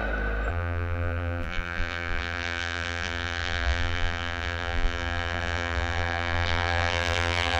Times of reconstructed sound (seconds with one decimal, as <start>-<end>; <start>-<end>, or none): 0.5-7.6